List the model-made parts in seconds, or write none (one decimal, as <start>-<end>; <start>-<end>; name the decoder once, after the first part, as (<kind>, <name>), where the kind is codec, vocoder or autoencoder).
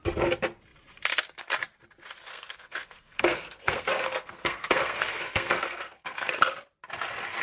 2.3-6.3 (codec, SNAC)